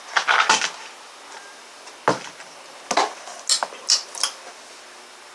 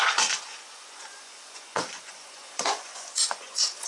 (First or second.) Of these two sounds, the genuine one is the first